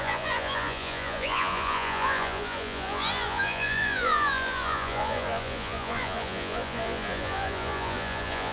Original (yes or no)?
no